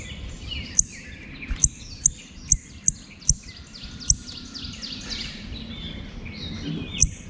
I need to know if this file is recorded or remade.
recorded